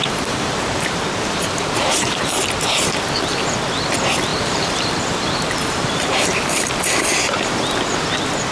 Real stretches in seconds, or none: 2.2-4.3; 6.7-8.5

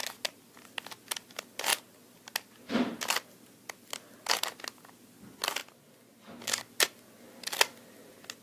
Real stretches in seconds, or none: 0.0-8.4